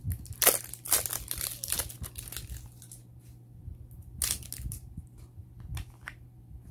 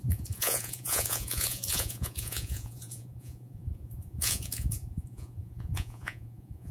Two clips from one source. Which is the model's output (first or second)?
second